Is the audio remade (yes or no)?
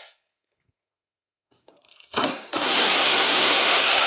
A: yes